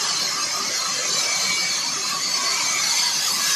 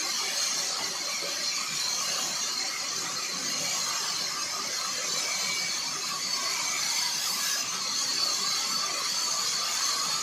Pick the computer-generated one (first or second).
second